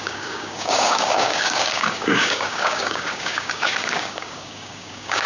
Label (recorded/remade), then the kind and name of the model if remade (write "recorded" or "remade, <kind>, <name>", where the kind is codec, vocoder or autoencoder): remade, codec, DAC